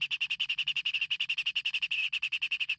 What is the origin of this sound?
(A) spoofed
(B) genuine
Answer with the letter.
B